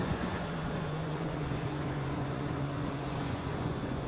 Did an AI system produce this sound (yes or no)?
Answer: yes